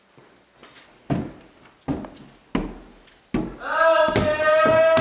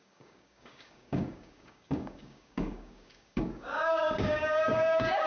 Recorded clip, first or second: first